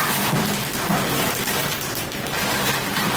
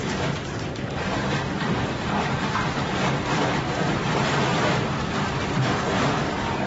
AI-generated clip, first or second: second